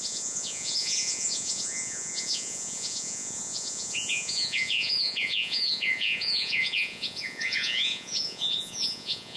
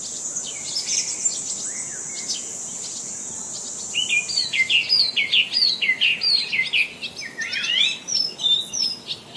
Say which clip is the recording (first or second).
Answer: second